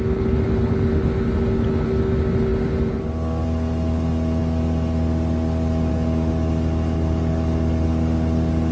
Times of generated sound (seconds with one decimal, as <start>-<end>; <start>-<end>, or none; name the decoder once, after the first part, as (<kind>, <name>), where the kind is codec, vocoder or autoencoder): none